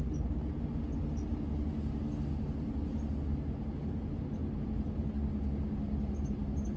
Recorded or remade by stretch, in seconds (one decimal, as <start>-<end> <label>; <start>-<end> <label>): 0.0-6.8 recorded